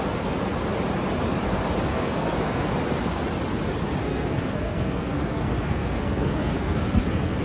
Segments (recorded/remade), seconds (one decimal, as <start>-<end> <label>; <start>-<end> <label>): 0.0-1.9 recorded; 1.9-2.7 remade; 2.7-4.0 recorded; 4.0-7.4 remade